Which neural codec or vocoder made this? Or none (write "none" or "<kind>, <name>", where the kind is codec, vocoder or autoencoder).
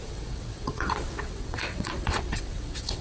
vocoder, WaveNeXt